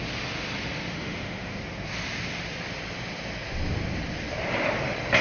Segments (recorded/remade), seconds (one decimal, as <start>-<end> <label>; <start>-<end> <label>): 0.0-0.9 recorded; 0.9-1.6 remade; 1.6-5.2 recorded